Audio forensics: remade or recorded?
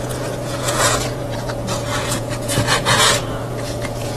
remade